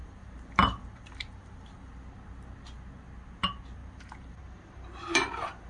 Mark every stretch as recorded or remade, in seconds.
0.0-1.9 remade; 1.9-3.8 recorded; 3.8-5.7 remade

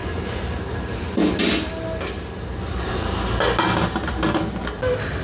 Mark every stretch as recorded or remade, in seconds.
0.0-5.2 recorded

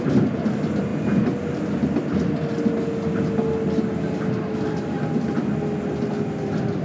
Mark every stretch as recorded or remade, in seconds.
0.0-6.8 recorded

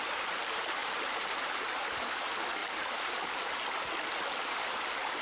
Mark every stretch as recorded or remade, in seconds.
0.0-0.8 recorded; 0.8-1.5 remade; 1.5-2.6 recorded; 2.6-3.6 remade; 3.6-5.2 recorded

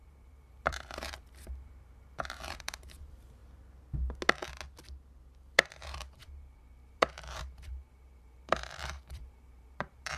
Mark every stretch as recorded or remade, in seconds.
0.0-3.4 remade; 3.4-5.4 recorded; 5.4-10.2 remade

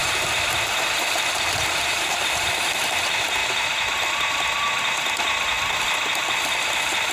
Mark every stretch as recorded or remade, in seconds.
0.0-3.4 remade; 3.4-5.7 recorded; 5.7-7.1 remade